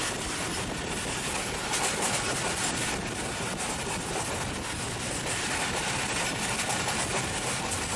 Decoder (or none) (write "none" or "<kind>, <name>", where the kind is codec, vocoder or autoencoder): none